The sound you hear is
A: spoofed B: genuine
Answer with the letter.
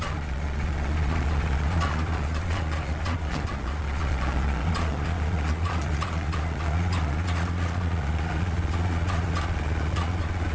A